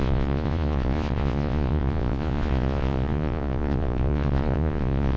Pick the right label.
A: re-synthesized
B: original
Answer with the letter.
A